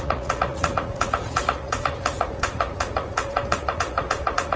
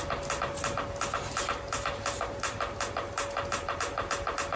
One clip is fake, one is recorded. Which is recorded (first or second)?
second